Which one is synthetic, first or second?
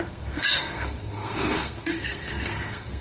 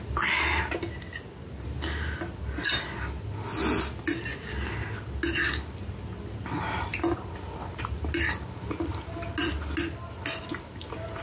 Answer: first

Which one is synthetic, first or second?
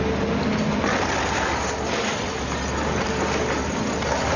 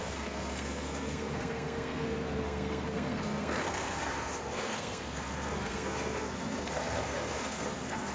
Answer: second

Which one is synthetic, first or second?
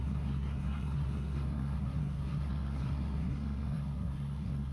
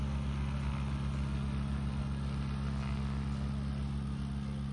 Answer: first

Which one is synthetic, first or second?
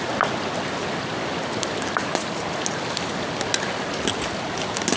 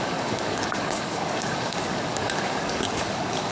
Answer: second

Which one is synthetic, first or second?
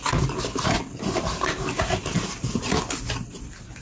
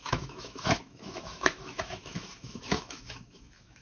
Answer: second